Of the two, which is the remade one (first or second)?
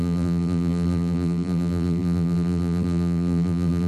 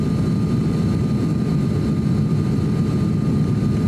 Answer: first